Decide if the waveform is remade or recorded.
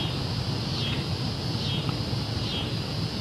recorded